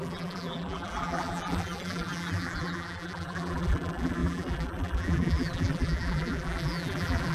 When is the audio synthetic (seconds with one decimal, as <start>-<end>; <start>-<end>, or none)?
0.0-7.3